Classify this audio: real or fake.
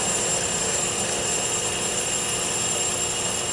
real